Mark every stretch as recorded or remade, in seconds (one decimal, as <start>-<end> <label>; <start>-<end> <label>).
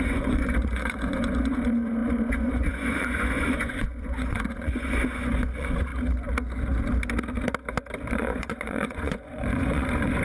0.0-5.9 remade; 5.9-8.1 recorded; 8.1-10.2 remade